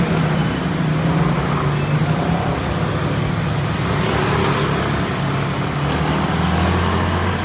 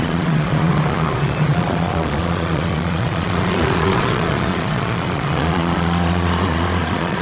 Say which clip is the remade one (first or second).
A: second